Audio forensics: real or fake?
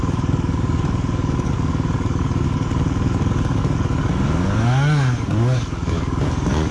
fake